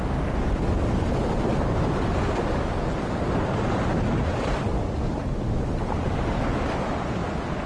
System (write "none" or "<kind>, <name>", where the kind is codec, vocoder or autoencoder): none